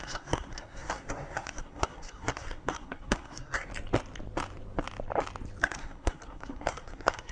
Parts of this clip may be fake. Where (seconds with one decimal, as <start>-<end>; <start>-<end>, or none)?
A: 0.0-3.7; 5.6-7.3